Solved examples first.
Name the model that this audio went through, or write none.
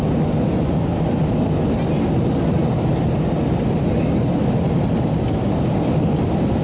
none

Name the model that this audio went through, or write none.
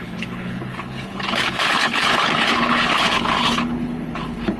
codec, HILCodec